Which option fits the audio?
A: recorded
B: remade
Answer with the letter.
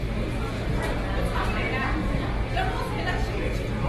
A